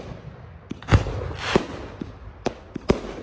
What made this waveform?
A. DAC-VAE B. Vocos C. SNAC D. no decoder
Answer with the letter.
D